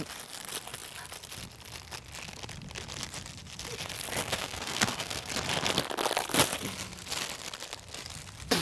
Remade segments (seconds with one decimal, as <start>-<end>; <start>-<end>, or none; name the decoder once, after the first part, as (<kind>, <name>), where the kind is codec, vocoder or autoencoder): 4.2-5.3 (codec, SNAC)